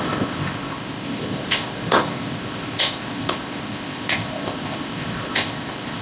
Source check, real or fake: fake